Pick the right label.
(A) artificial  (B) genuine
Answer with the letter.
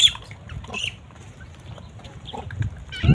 A